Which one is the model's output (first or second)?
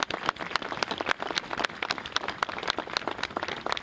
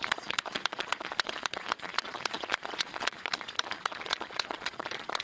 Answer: second